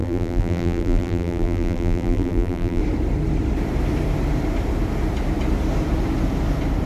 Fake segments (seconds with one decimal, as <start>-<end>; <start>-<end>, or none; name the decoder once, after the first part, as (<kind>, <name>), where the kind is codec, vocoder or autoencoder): 0.0-2.8 (vocoder, BigVGAN v2)